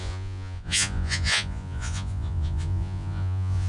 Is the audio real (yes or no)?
no